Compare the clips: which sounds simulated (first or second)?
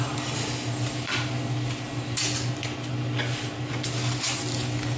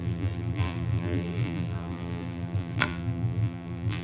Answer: second